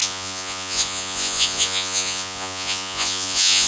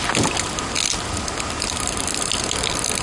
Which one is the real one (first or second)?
second